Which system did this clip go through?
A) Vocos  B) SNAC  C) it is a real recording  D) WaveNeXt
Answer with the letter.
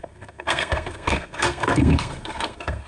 B